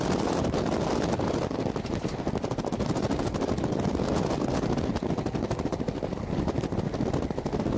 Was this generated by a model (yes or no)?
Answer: no